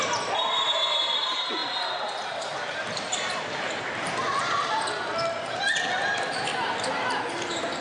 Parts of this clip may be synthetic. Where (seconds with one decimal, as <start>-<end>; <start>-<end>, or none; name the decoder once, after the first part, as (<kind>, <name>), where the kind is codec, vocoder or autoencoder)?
0.0-1.6 (vocoder, BigVGAN v2); 3.8-5.1; 6.0-6.5; 7.2-7.8